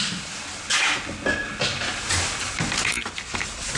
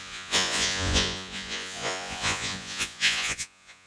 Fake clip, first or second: second